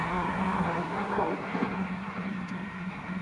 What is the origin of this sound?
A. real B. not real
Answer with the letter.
B